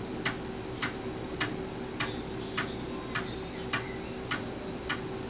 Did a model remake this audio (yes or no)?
no